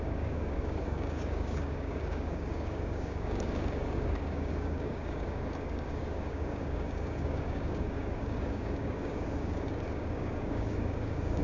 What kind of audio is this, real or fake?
fake